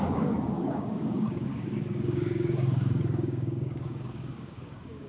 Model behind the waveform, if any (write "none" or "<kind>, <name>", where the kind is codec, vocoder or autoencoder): codec, DAC